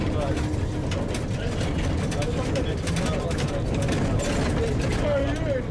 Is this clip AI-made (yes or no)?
no